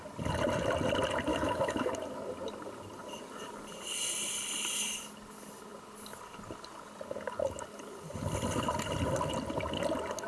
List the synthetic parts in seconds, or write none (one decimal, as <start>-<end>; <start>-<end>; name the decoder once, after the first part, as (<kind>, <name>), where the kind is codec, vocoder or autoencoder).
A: 1.3-1.9 (autoencoder, DAC-VAE)

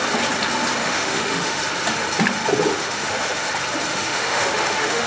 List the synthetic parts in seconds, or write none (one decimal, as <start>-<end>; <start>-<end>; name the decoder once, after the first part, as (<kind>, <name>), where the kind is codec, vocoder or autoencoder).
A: 0.8-1.6 (autoencoder, DAC-VAE); 2.7-3.5; 3.9-5.1

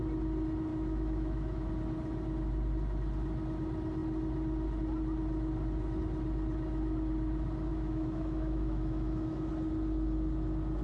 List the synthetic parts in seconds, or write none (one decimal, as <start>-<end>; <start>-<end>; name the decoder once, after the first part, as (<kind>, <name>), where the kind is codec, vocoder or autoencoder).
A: 0.7-1.7 (autoencoder, DAC-VAE); 7.7-9.5

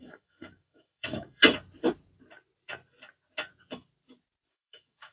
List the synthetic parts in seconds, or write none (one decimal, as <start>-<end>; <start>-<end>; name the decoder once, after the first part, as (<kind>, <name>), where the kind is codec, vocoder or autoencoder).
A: 0.0-1.4 (autoencoder, DAC-VAE); 4.5-5.1

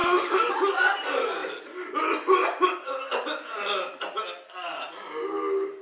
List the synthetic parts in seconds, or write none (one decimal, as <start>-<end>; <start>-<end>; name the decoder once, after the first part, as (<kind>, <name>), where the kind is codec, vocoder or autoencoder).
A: 0.0-0.5 (autoencoder, DAC-VAE)

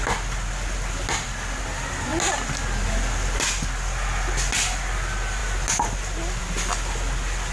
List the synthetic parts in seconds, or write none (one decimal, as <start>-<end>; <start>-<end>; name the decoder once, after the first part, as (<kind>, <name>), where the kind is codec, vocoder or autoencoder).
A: none

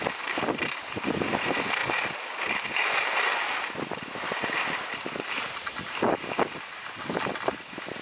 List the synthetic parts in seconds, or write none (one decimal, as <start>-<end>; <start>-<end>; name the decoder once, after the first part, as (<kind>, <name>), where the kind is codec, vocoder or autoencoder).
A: none